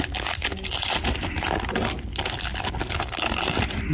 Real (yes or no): yes